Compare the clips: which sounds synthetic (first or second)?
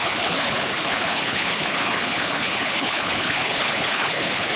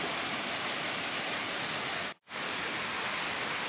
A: first